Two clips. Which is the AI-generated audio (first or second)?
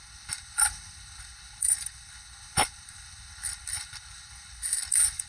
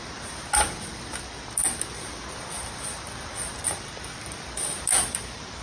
first